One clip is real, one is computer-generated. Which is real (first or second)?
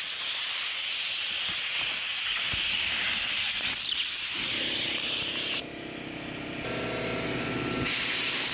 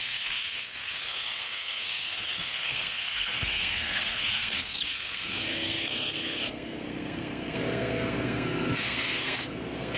first